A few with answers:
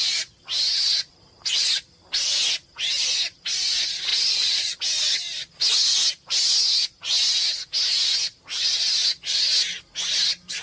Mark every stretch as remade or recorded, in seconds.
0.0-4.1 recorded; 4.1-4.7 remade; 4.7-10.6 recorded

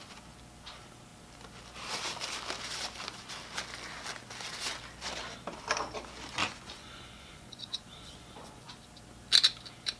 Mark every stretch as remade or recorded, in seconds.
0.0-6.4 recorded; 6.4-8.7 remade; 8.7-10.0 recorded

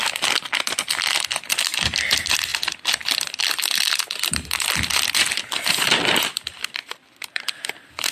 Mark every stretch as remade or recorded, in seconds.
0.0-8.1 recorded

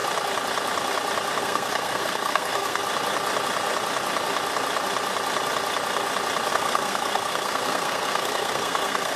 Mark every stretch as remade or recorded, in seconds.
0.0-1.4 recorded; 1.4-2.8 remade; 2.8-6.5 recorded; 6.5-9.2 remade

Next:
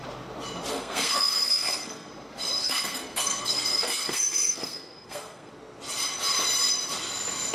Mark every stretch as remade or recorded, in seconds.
0.0-0.7 recorded; 0.7-2.1 remade; 2.1-2.6 recorded; 2.6-5.5 remade; 5.5-7.5 recorded

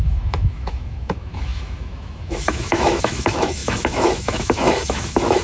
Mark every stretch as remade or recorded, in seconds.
0.0-5.4 remade